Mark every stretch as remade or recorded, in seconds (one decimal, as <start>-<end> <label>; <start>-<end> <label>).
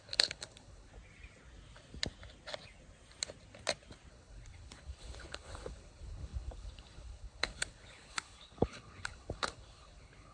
0.0-0.9 remade; 0.9-4.1 recorded; 4.1-10.3 remade